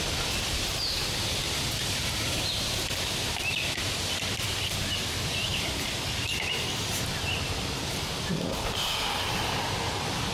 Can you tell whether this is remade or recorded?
recorded